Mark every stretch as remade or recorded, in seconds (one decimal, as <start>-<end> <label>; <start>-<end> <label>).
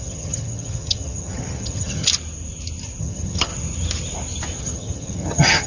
0.0-2.1 remade; 2.1-3.0 recorded; 3.0-3.5 remade; 3.5-4.6 recorded; 4.6-5.7 remade